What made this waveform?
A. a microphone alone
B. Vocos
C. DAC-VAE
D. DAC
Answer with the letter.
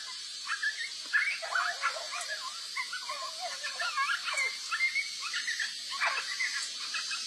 A